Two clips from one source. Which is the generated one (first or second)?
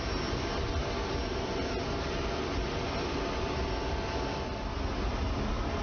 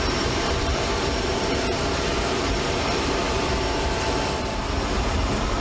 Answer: second